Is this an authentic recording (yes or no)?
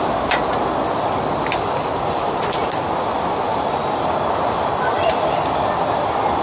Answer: yes